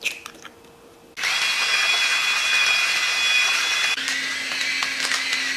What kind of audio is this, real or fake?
real